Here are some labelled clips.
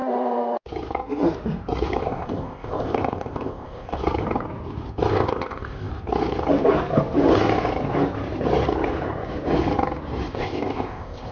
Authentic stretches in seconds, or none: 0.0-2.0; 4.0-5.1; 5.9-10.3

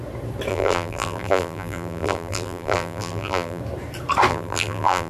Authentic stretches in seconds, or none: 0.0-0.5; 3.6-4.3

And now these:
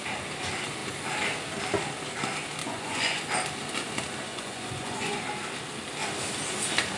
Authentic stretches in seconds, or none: 0.0-2.6; 3.2-4.3; 5.2-7.0

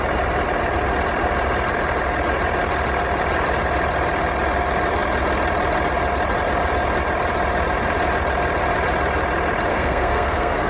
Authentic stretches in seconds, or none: 0.0-9.7

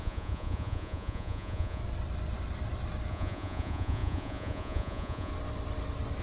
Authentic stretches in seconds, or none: 1.8-3.1; 5.3-6.2

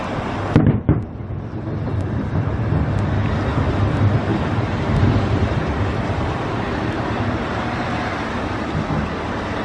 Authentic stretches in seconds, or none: 0.0-4.3; 8.6-9.6

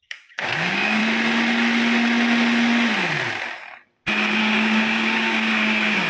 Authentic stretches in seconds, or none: 1.0-4.4

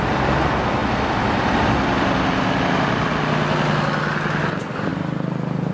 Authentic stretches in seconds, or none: 0.0-0.8; 3.2-5.7